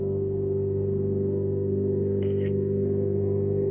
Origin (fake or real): fake